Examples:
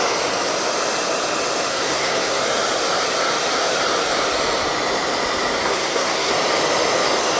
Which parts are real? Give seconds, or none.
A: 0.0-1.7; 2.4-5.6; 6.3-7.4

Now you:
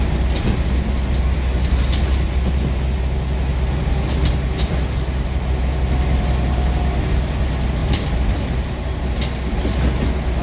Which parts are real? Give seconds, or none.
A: 0.0-7.8; 9.0-10.4

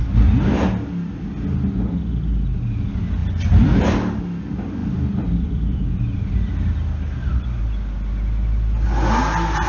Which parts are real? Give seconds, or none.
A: 0.0-3.2; 3.8-4.8; 7.6-9.7

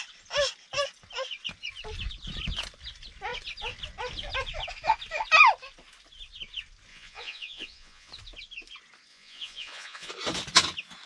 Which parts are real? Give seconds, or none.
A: 0.0-6.9; 8.1-9.1; 10.1-11.1

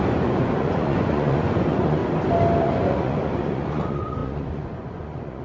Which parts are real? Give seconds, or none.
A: 2.0-2.6